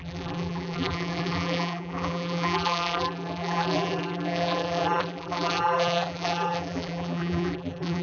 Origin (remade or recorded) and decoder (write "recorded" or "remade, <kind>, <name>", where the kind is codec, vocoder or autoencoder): remade, vocoder, BigVGAN v2